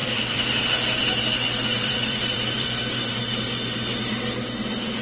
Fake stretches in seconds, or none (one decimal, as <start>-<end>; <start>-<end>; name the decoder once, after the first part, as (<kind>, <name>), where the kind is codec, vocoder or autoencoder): 0.0-0.7 (vocoder, BigVGAN v2); 1.7-3.2